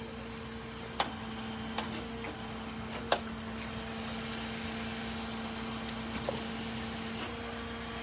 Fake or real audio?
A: real